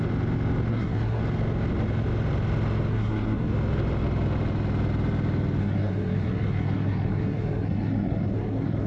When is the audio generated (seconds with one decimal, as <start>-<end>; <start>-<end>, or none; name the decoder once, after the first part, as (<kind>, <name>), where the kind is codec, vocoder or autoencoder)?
0.7-1.2 (codec, SNAC); 2.9-3.5; 5.6-8.9

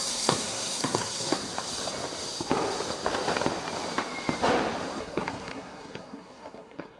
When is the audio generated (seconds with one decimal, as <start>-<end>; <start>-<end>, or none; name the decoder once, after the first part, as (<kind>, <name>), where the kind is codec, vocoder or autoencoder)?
0.0-1.4 (codec, SNAC); 5.0-7.0